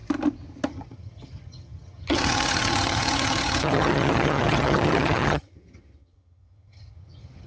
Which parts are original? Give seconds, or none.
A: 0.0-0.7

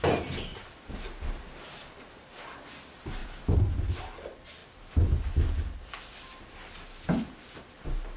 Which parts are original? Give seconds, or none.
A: 0.0-0.5; 1.3-3.2; 3.9-4.6; 5.2-8.2

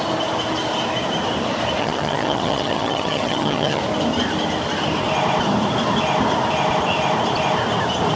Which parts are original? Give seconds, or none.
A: 0.0-1.8; 3.8-8.2